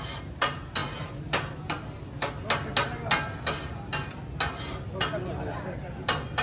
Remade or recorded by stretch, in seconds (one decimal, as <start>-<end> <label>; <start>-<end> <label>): 0.0-6.4 recorded